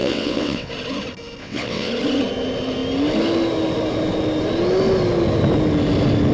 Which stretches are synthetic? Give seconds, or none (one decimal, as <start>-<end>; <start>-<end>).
0.0-0.7; 1.4-1.9